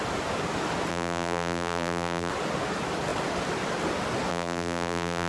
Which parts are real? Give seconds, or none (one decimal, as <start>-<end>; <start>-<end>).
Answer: 0.0-0.9; 2.3-4.3